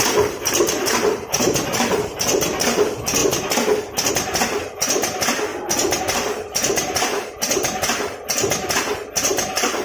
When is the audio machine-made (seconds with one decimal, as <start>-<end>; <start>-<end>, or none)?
0.0-3.2; 4.1-5.5; 6.0-9.8